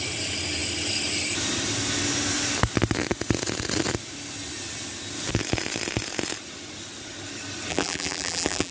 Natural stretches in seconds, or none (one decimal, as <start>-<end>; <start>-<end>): 0.0-7.7